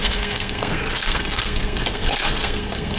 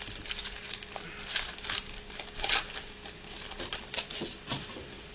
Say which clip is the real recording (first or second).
second